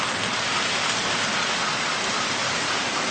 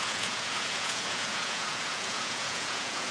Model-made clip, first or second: second